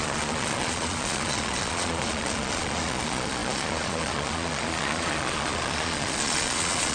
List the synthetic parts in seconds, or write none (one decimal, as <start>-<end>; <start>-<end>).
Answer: 0.0-6.9